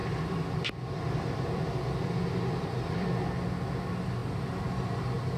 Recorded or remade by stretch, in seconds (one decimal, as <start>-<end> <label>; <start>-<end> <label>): 0.0-3.2 remade; 3.2-5.4 recorded